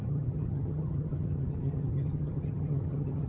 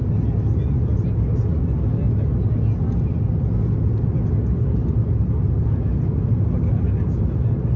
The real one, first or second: second